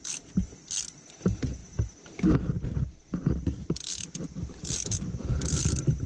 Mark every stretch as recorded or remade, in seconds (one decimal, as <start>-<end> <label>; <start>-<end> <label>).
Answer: 0.0-6.1 recorded